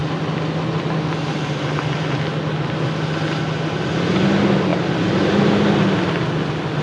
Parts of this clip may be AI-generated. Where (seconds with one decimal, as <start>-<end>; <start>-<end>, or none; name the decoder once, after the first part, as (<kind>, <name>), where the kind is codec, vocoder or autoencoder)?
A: none